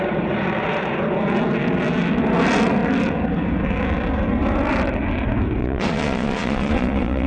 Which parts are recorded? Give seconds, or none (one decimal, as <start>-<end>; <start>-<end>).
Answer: 0.0-5.6